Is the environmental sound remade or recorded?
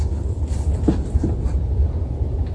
recorded